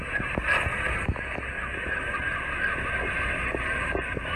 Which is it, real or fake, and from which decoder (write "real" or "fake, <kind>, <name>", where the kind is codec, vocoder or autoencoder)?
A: real